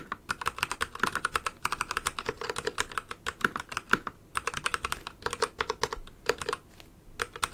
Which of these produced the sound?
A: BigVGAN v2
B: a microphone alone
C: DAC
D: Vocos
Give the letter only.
B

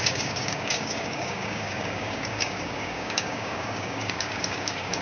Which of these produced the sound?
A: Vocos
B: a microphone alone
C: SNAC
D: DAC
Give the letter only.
D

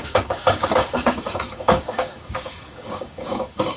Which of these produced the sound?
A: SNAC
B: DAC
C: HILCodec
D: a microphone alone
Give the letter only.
B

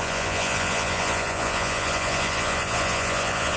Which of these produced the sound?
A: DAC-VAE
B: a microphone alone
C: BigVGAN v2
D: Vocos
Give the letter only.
D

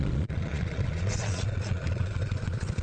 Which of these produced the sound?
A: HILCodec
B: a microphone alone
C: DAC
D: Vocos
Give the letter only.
D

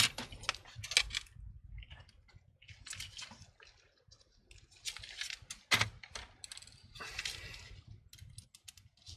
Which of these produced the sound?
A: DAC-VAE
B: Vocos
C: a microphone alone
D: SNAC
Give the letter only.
C